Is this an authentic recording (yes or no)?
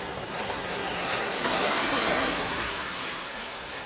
no